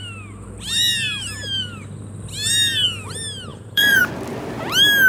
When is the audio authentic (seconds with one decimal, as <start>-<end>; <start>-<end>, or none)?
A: 0.0-3.5; 4.0-5.1